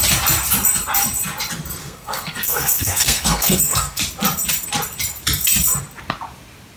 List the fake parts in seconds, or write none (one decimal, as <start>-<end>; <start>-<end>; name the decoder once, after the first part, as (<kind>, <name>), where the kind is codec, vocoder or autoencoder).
1.8-4.0 (codec, SNAC)